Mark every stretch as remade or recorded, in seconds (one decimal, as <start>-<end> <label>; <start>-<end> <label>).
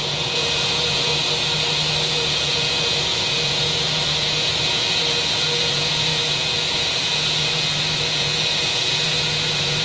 0.0-1.1 remade; 1.1-2.1 recorded; 2.1-9.8 remade